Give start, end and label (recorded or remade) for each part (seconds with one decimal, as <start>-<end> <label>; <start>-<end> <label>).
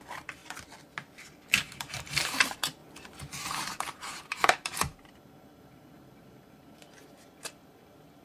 0.0-0.4 remade; 0.4-1.6 recorded; 1.6-2.8 remade; 2.8-3.5 recorded; 3.5-8.2 remade